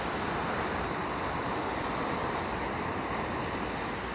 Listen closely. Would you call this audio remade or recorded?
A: recorded